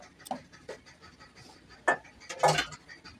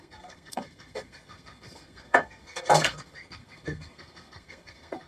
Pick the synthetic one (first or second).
second